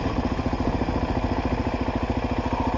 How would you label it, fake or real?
real